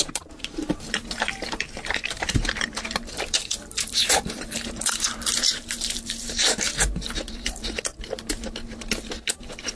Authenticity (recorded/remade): remade